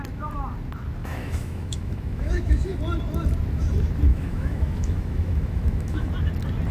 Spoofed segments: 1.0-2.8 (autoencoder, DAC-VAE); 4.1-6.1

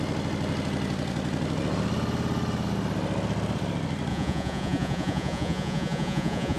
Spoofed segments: 4.1-6.6 (vocoder, Vocos)

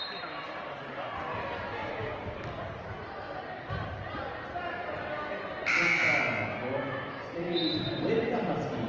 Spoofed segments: none

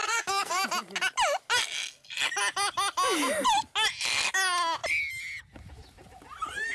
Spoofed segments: 0.0-0.6 (codec, SNAC)

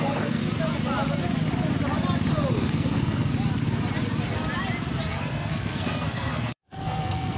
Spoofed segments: 0.0-0.4 (codec, SNAC); 2.5-3.3; 5.1-7.4